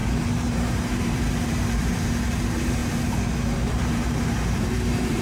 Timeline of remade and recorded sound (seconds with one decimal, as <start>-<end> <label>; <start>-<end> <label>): 0.0-2.8 remade; 2.8-3.7 recorded; 3.7-5.2 remade